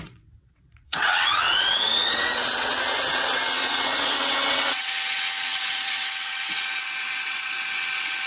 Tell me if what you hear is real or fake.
fake